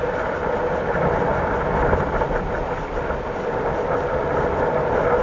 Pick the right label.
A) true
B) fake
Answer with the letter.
A